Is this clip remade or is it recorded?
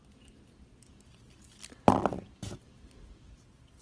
recorded